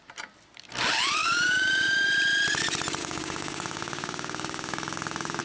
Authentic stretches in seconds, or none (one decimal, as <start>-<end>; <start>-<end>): 0.0-1.2; 2.1-3.0